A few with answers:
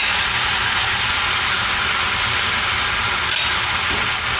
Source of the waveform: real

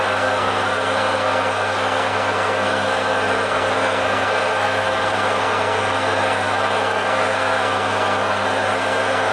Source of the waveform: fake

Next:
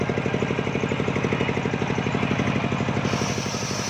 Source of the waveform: real